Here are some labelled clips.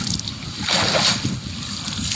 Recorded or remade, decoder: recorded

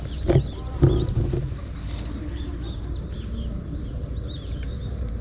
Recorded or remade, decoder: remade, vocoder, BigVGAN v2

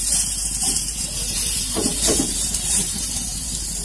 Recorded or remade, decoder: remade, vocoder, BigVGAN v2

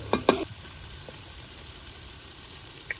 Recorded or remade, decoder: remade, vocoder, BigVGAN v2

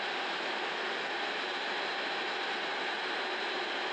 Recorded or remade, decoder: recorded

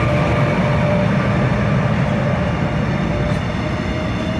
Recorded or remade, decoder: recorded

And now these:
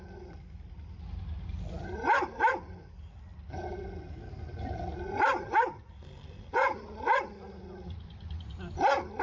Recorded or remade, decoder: recorded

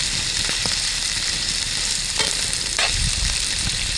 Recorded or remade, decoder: remade, vocoder, BigVGAN v2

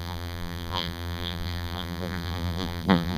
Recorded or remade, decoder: remade, vocoder, BigVGAN v2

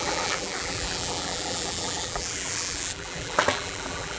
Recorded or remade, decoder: remade, vocoder, BigVGAN v2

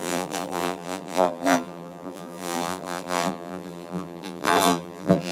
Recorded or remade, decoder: remade, vocoder, BigVGAN v2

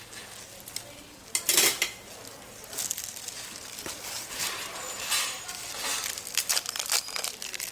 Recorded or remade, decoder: recorded